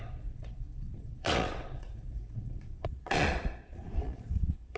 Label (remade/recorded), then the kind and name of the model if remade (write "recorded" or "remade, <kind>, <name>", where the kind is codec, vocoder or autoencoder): remade, vocoder, Vocos